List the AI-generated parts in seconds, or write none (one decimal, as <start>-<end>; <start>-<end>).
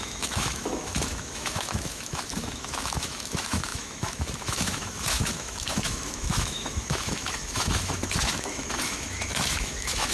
0.0-10.1